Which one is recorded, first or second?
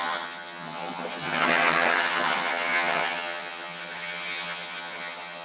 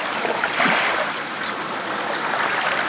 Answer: second